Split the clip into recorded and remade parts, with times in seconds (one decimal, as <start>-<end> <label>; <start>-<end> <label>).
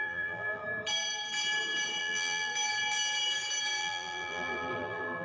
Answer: 0.0-0.6 remade; 0.6-2.0 recorded; 2.0-2.5 remade; 2.5-3.8 recorded; 3.8-5.2 remade